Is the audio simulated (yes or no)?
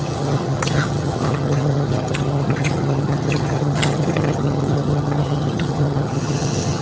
yes